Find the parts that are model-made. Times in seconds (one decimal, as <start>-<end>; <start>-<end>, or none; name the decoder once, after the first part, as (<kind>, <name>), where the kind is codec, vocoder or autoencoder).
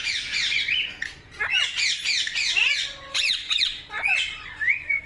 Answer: 0.0-1.4 (vocoder, Vocos); 2.3-5.1